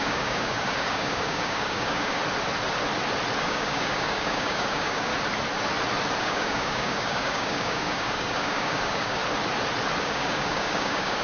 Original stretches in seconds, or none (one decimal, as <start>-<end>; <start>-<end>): 2.2-3.4; 5.1-6.2; 9.2-10.0